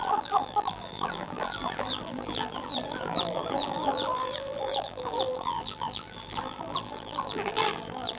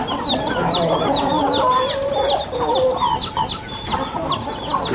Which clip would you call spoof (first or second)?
first